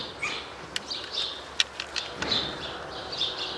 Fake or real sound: real